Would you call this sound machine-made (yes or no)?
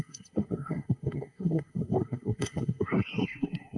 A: yes